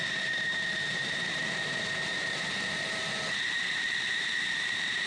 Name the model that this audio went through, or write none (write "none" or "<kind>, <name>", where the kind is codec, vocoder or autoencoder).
vocoder, BigVGAN v2